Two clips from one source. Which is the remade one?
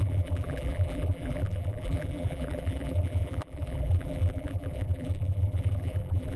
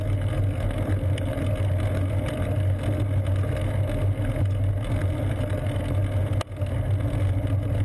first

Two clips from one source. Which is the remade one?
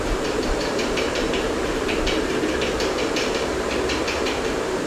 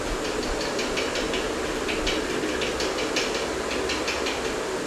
first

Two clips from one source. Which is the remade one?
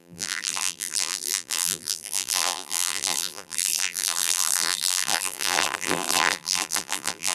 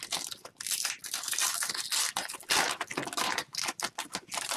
first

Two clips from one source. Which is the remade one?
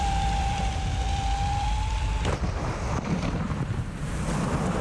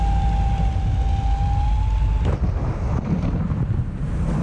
first